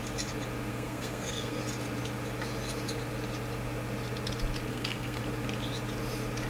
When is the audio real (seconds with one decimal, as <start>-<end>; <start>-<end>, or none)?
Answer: 0.0-0.7; 1.6-4.7; 5.2-6.5